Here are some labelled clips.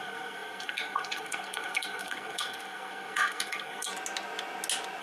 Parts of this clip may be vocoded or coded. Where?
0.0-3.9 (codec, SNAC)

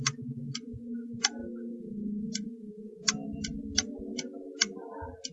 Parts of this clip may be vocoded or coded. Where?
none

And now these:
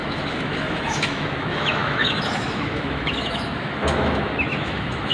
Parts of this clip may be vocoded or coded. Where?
0.0-5.1 (autoencoder, DAC-VAE)